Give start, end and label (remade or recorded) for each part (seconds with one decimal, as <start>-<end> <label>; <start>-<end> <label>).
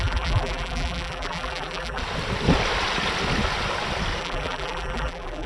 0.0-2.0 remade; 2.0-4.2 recorded; 4.2-5.5 remade